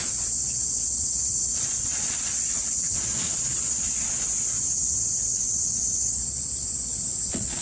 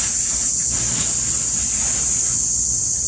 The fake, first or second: first